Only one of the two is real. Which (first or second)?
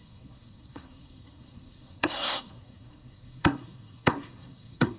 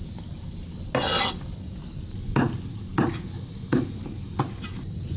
second